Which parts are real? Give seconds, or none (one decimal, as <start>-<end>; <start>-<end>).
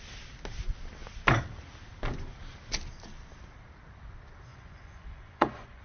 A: 0.0-4.5